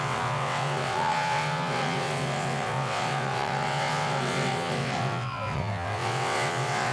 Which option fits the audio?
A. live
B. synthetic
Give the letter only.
B